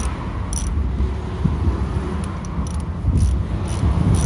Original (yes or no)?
yes